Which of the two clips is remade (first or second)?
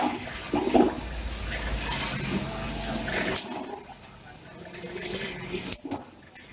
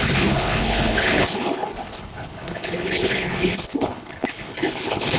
second